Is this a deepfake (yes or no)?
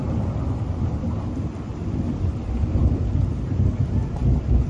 yes